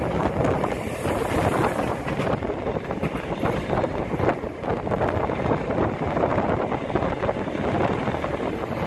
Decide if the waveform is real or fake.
real